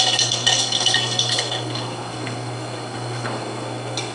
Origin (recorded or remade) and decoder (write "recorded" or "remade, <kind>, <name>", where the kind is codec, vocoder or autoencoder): remade, codec, SNAC